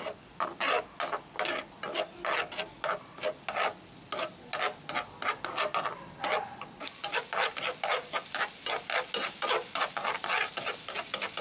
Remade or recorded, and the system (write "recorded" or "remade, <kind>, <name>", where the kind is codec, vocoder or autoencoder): recorded